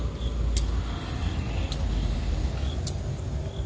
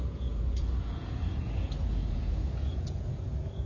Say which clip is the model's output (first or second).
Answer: second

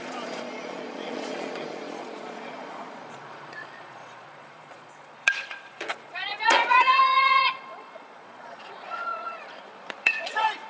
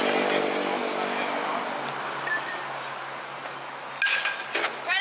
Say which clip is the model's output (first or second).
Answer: first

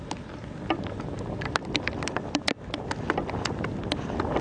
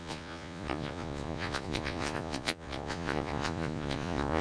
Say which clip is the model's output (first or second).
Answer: second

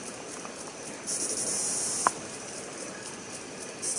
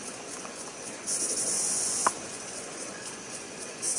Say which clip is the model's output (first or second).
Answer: second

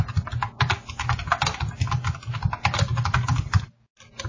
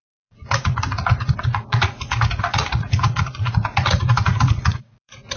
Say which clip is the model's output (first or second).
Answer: second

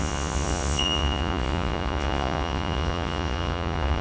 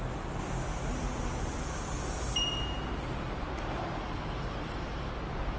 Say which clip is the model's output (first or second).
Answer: first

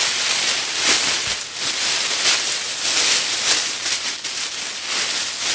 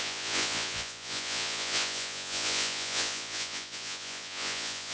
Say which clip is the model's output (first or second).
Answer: second